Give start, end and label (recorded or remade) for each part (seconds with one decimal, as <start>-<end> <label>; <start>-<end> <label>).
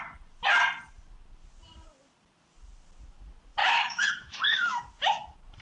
0.0-3.6 recorded; 3.6-4.8 remade; 4.8-5.6 recorded